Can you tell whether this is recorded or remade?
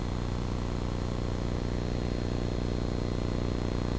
recorded